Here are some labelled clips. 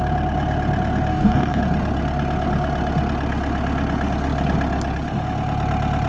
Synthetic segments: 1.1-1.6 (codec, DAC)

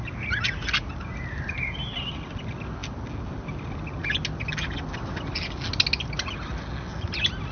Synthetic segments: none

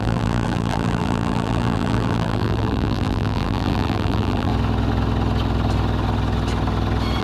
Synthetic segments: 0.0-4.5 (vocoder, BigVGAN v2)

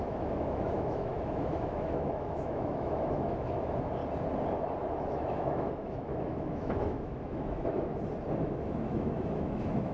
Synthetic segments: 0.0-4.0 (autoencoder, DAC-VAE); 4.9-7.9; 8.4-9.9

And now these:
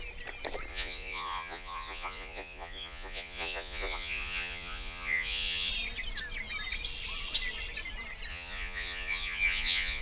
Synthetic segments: 0.7-5.7 (vocoder, Vocos); 8.3-10.0

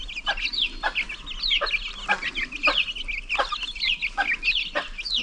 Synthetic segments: none